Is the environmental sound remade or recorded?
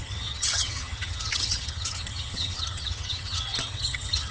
remade